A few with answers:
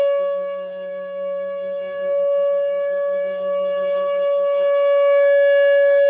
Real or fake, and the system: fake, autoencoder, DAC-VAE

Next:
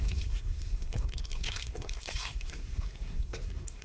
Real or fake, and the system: fake, codec, SNAC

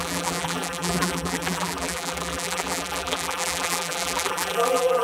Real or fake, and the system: fake, vocoder, BigVGAN v2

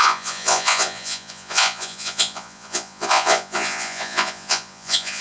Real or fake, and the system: fake, vocoder, Vocos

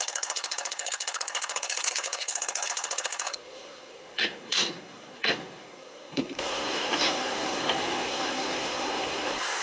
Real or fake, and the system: fake, codec, SNAC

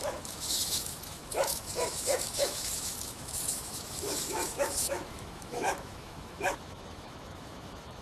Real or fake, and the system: fake, autoencoder, DAC-VAE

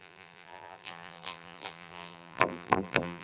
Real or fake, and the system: fake, vocoder, BigVGAN v2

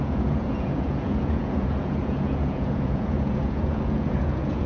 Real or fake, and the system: fake, vocoder, Vocos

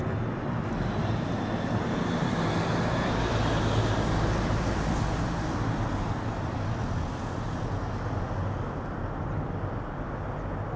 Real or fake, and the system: real